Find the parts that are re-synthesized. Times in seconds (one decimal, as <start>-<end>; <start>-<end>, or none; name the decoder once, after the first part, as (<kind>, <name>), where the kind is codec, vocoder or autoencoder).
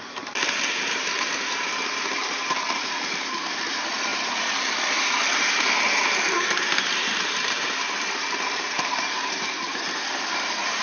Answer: 0.0-10.8 (vocoder, BigVGAN v2)